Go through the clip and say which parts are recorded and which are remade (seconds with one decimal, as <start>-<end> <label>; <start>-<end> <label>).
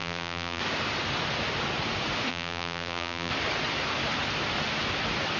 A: 0.0-0.6 remade; 0.6-2.3 recorded; 2.3-3.3 remade; 3.3-5.4 recorded